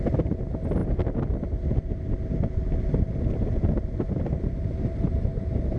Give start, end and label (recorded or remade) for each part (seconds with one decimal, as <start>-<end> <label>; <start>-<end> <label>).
0.0-5.8 recorded